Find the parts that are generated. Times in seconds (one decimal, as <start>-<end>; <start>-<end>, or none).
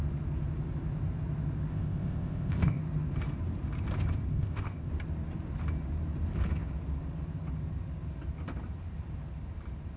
1.7-2.8; 4.3-4.9